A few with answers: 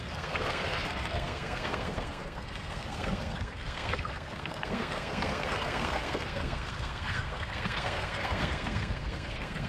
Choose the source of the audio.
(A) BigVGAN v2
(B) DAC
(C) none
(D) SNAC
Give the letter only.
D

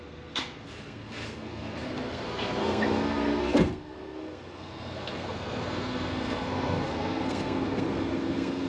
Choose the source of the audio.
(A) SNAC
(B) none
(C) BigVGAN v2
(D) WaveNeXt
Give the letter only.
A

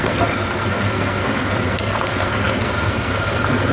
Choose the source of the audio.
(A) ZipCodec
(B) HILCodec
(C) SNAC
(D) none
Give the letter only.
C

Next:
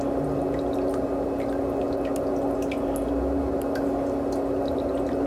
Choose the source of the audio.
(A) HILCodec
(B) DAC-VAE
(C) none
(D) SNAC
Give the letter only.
C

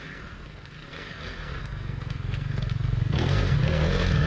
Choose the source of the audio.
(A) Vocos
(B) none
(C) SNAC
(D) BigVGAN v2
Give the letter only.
C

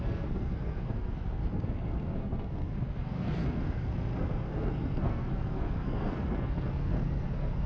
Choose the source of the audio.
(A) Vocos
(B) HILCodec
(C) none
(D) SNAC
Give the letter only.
D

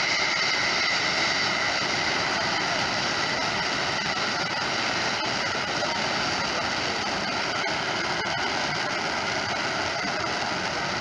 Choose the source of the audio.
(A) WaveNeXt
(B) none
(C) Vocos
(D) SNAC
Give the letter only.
B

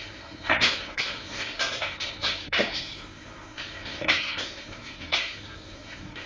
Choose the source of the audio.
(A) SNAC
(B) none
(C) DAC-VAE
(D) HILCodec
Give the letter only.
A